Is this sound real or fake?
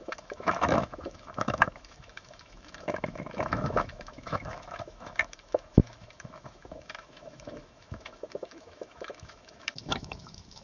fake